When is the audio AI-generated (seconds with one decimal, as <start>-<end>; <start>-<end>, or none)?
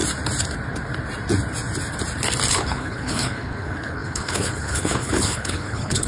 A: 2.5-6.1